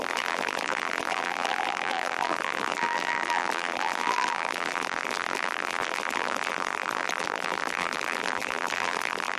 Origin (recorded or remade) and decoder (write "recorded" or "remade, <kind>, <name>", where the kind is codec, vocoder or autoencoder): remade, vocoder, BigVGAN v2